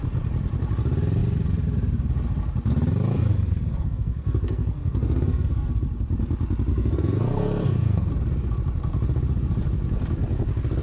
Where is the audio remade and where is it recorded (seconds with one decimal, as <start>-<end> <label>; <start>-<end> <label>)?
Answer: 0.0-3.3 recorded; 3.3-5.7 remade; 5.7-6.7 recorded; 6.7-8.1 remade; 8.1-10.8 recorded